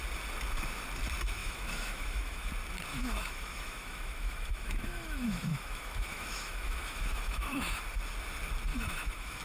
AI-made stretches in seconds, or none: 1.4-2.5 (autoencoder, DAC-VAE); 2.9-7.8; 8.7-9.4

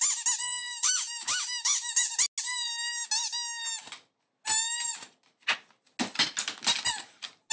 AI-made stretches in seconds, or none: 0.4-2.1 (autoencoder, DAC-VAE)

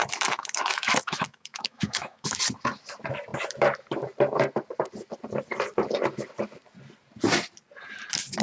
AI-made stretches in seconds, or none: 0.0-2.4 (autoencoder, DAC-VAE)

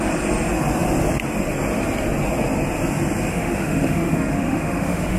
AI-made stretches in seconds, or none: 3.3-5.2 (autoencoder, DAC-VAE)

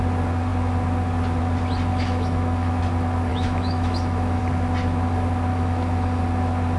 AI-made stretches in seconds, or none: 1.9-2.8 (autoencoder, DAC-VAE); 3.3-4.4; 5.5-6.2

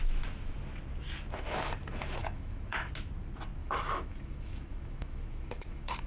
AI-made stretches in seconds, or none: 2.2-2.9 (autoencoder, DAC-VAE); 3.6-6.1

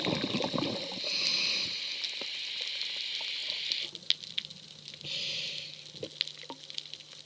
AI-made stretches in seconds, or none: none

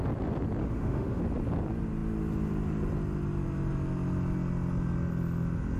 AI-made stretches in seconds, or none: 0.6-1.2 (autoencoder, DAC-VAE)